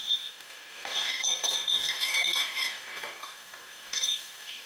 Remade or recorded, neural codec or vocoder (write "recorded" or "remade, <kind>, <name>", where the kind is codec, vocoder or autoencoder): remade, codec, DAC